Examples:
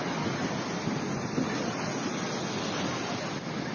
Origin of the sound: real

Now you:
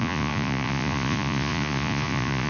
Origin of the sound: fake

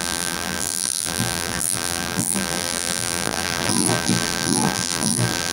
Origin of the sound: fake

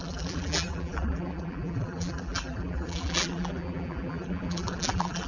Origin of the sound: fake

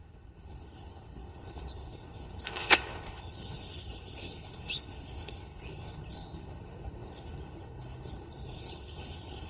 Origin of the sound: fake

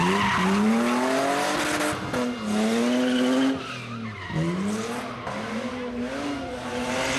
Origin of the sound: real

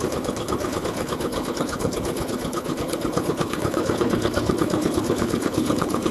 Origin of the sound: fake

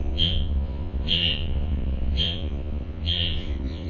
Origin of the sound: fake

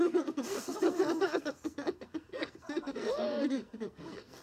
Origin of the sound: fake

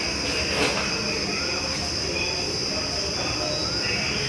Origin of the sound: fake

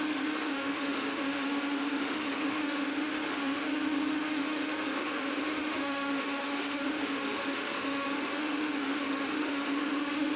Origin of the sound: fake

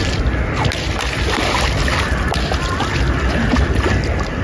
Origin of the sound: real